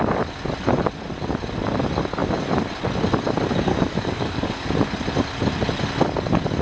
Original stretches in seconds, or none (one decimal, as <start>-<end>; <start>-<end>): 0.0-3.7; 4.7-6.6